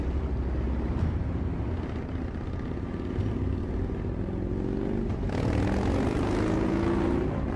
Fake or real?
real